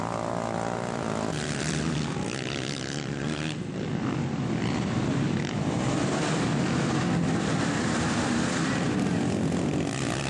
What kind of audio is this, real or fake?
fake